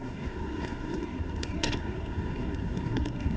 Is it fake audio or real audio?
fake